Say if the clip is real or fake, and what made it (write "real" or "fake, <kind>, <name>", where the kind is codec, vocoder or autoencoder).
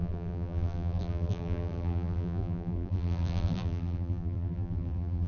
fake, vocoder, BigVGAN v2